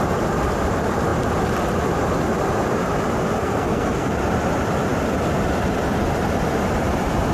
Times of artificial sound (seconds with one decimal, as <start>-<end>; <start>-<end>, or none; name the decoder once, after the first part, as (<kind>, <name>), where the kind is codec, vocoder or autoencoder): 3.4-4.1 (codec, SNAC)